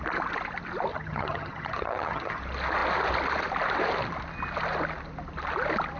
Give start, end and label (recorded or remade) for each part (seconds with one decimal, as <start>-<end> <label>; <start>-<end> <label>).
0.0-0.9 recorded; 0.9-2.4 remade; 2.4-6.0 recorded